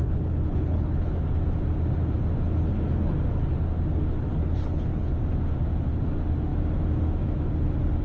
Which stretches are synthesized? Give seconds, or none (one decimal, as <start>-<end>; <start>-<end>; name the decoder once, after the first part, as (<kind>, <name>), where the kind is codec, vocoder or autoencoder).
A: 0.0-1.2 (codec, HILCodec); 4.3-5.1